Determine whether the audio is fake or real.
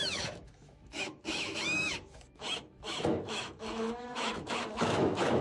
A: fake